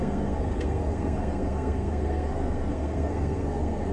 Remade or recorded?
remade